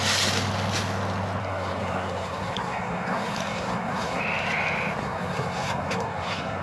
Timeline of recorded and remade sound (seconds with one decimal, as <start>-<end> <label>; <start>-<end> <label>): 0.0-1.4 recorded; 1.4-4.2 remade; 4.2-5.0 recorded; 5.0-6.6 remade